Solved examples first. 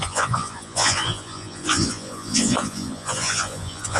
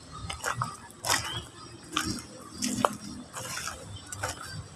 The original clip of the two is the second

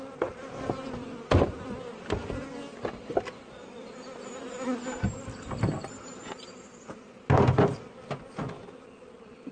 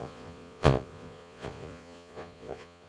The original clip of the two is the first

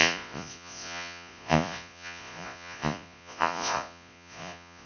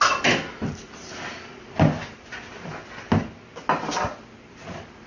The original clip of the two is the second